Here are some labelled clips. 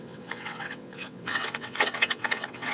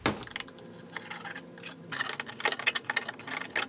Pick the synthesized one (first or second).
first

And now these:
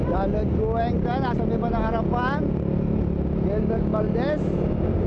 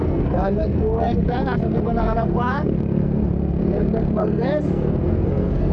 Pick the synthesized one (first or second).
second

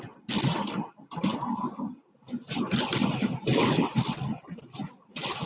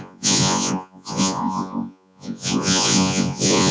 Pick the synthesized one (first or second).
second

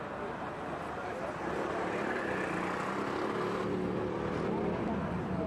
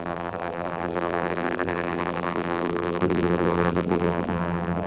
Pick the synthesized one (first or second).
second